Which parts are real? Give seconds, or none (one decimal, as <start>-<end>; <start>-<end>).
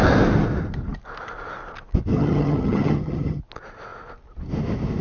0.0-2.1; 3.4-5.0